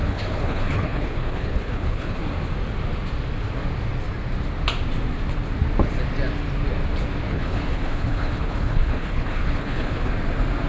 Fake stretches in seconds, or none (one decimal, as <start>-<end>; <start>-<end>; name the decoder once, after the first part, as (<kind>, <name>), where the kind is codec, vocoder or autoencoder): 0.0-2.2 (codec, HILCodec); 7.3-10.1